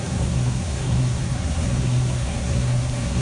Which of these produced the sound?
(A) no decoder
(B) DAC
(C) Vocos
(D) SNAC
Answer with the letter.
D